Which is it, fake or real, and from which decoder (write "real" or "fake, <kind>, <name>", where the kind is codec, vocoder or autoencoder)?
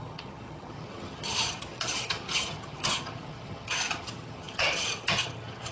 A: fake, vocoder, HiFi-GAN